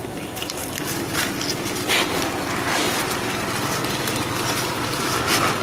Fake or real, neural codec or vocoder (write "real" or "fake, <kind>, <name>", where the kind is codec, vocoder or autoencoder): real